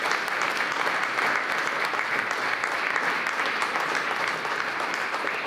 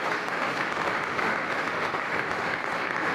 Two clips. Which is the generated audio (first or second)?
second